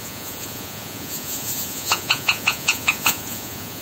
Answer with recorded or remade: remade